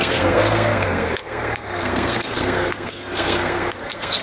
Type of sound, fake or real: fake